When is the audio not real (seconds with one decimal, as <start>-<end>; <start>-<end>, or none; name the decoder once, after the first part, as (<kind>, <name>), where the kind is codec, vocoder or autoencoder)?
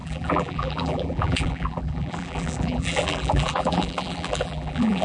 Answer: 0.0-5.0 (vocoder, BigVGAN v2)